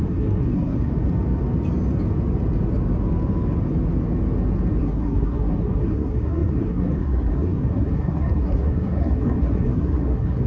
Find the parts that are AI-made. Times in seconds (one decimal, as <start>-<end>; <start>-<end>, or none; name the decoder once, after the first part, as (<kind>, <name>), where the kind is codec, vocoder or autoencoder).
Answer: 0.0-0.9 (codec, SNAC); 4.8-10.5